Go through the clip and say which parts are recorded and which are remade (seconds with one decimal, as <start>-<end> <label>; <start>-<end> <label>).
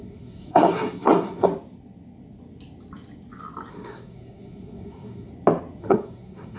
0.0-1.5 remade; 1.5-3.7 recorded; 3.7-5.3 remade; 5.3-5.8 recorded; 5.8-6.6 remade